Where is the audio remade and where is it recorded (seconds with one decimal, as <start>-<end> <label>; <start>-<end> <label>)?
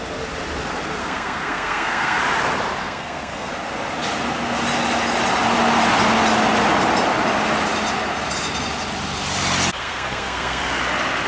0.0-1.0 recorded; 1.0-2.2 remade; 2.2-2.8 recorded; 2.8-3.5 remade; 3.5-9.8 recorded; 9.8-10.6 remade; 10.6-11.3 recorded